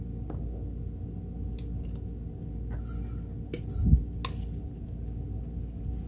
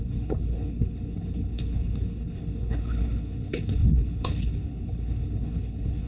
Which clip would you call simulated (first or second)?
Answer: second